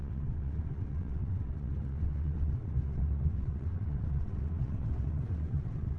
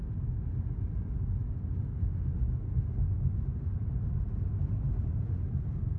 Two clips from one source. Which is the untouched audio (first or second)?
second